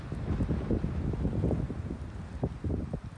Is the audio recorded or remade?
recorded